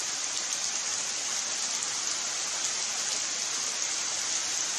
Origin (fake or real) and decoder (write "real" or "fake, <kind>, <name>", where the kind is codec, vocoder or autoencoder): real